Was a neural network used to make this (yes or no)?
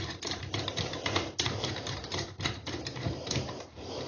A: yes